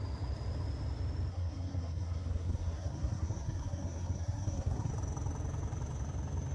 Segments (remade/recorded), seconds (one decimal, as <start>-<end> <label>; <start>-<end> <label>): 0.0-1.3 recorded; 1.3-4.9 remade; 4.9-6.5 recorded